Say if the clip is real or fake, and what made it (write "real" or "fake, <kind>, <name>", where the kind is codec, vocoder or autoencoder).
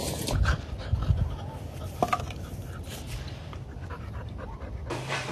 fake, vocoder, BigVGAN v2